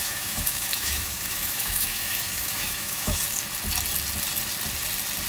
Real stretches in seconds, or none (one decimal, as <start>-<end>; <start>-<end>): 3.2-5.3